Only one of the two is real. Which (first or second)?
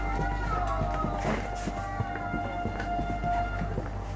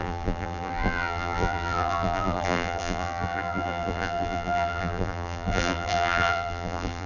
first